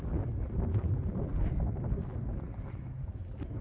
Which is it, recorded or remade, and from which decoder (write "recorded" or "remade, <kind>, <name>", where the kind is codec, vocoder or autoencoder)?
recorded